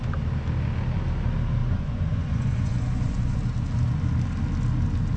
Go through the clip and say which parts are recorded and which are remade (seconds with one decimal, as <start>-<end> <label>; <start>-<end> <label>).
0.0-1.6 recorded; 1.6-3.4 remade; 3.4-5.2 recorded